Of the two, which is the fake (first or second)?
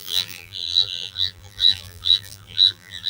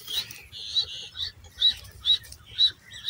first